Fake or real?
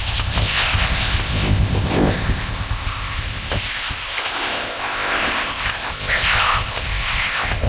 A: fake